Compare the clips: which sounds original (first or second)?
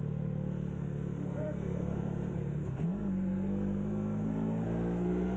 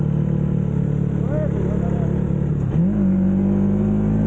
second